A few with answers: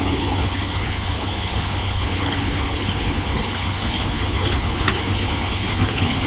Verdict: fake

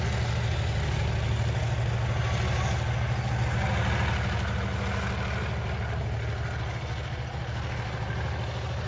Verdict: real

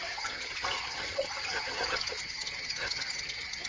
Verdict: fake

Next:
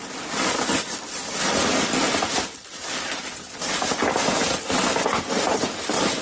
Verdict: real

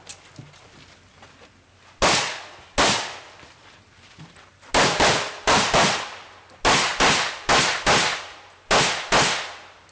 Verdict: real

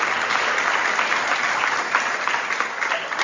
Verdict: real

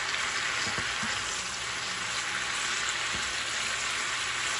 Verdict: real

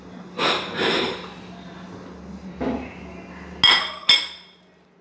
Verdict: real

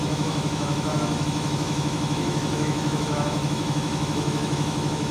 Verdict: fake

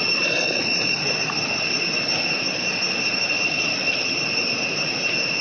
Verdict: real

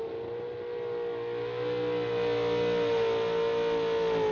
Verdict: real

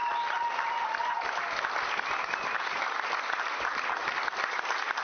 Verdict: real